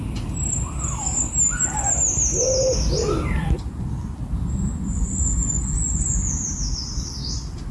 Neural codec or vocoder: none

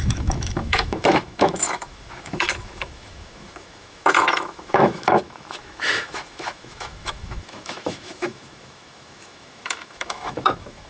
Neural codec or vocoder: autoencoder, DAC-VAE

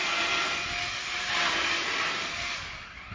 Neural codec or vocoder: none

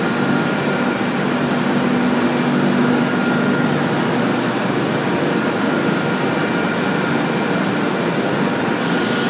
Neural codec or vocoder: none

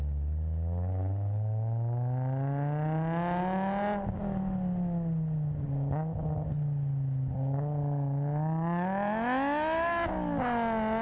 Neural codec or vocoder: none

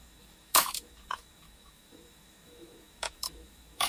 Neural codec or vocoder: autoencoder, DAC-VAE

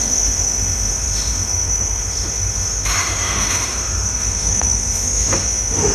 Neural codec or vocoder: autoencoder, DAC-VAE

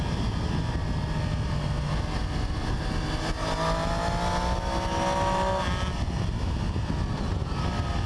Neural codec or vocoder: none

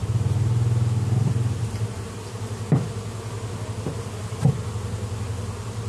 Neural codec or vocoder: none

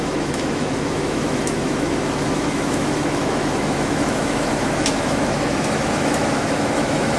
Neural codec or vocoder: autoencoder, DAC-VAE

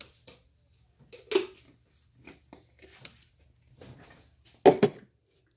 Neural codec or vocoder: none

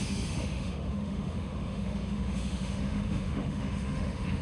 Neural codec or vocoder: autoencoder, DAC-VAE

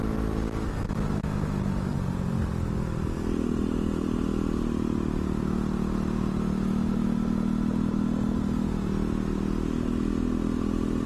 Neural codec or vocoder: none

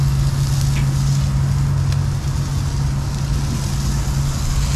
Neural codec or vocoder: none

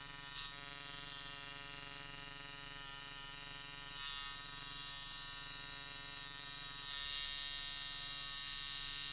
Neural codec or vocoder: none